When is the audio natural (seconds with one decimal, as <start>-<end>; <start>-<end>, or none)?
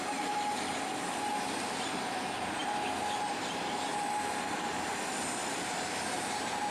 0.0-1.3; 2.1-3.9; 6.1-6.7